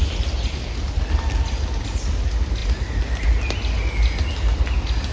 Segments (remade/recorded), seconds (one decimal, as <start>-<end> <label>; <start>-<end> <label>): 0.0-5.1 recorded